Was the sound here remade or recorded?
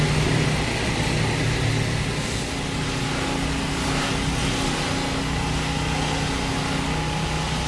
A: recorded